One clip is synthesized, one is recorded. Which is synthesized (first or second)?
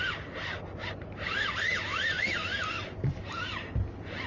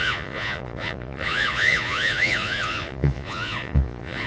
second